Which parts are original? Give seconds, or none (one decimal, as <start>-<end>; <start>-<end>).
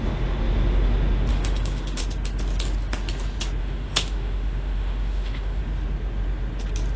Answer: 0.0-1.3; 2.0-3.6; 5.6-7.0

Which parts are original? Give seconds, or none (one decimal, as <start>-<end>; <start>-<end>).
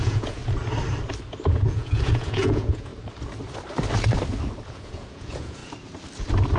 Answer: 0.4-1.5; 2.9-4.7; 5.6-6.6